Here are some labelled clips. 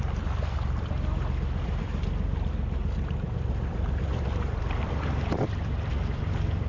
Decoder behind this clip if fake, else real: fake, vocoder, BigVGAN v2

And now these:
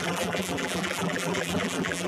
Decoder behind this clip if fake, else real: fake, vocoder, BigVGAN v2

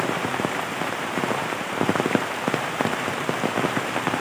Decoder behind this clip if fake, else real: fake, vocoder, BigVGAN v2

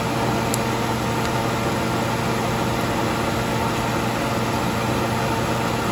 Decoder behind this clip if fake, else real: real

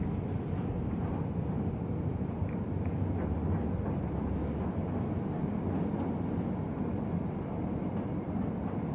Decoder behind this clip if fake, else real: real